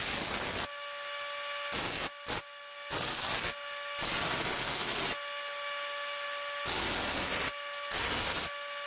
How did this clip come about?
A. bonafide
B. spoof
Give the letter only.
A